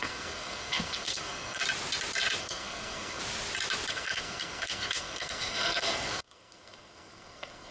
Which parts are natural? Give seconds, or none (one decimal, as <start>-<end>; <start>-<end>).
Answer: 1.6-2.4; 3.2-3.9